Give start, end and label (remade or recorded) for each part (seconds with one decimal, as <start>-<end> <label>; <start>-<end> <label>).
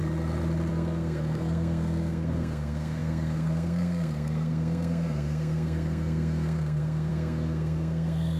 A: 0.0-0.7 recorded; 0.7-8.4 remade